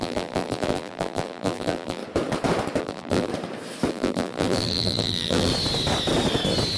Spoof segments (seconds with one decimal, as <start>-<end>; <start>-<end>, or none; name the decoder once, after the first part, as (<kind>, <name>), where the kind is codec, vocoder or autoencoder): 0.0-2.0 (vocoder, BigVGAN v2); 2.8-3.3; 3.9-5.5